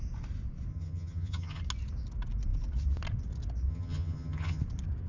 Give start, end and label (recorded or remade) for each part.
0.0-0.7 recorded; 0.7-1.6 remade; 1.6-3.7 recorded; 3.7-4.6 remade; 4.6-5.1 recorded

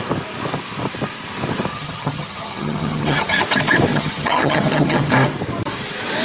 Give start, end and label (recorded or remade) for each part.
0.0-1.7 recorded; 1.7-3.4 remade; 3.4-3.9 recorded; 3.9-5.0 remade; 5.0-6.2 recorded

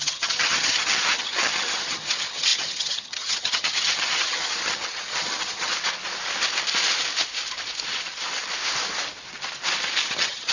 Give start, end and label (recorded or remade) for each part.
0.0-5.7 remade; 5.7-10.1 recorded; 10.1-10.5 remade

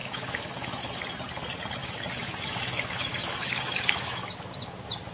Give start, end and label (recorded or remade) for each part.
0.0-1.0 remade; 1.0-1.8 recorded; 1.8-4.3 remade; 4.3-5.1 recorded

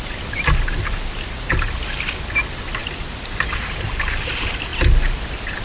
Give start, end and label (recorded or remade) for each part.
0.0-5.6 recorded

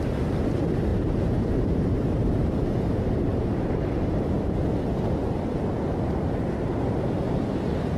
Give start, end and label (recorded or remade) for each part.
0.0-0.9 recorded; 0.9-2.6 remade; 2.6-3.3 recorded; 3.3-3.9 remade; 3.9-8.0 recorded